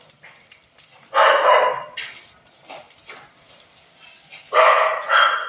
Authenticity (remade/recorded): recorded